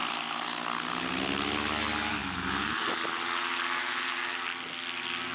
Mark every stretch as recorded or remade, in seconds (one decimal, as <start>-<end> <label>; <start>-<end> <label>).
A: 0.0-5.3 recorded